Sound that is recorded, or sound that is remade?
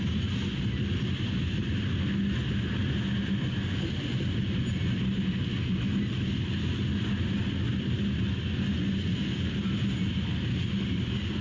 recorded